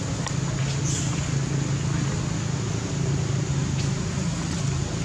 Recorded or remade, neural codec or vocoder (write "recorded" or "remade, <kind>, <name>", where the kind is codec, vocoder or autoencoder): recorded